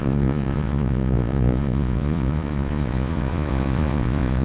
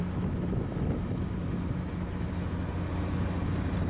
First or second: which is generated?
first